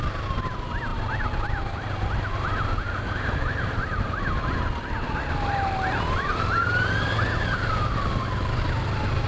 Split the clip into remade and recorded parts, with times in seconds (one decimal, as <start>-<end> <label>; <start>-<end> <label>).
0.0-9.3 recorded